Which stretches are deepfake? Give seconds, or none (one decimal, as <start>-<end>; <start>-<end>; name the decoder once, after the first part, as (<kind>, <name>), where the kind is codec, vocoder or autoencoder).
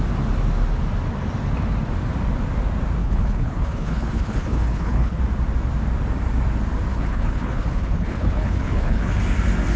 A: 3.0-5.2 (codec, HILCodec); 6.9-9.2